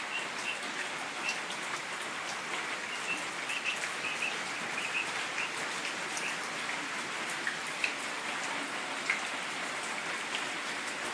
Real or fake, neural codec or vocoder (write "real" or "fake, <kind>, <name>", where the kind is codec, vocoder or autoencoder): real